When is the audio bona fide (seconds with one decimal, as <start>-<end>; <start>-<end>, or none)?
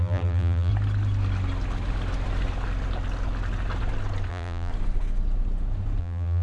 0.7-4.3; 4.7-6.0